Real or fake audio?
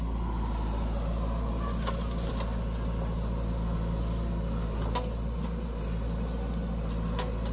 real